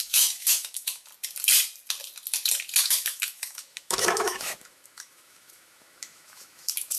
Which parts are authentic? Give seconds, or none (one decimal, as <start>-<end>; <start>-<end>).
1.1-2.8